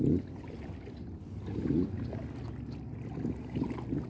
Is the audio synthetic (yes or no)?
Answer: no